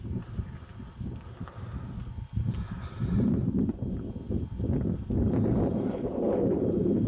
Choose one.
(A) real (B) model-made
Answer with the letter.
A